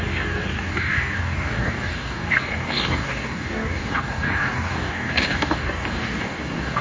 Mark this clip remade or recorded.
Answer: remade